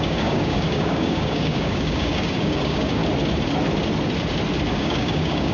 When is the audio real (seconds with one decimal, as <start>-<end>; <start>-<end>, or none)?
3.0-4.7